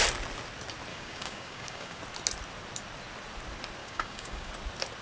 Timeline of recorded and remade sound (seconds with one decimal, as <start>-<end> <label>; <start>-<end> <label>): 0.0-0.9 recorded; 0.9-2.0 remade; 2.0-3.8 recorded; 3.8-4.5 remade; 4.5-5.0 recorded